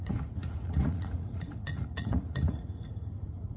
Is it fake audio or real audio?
fake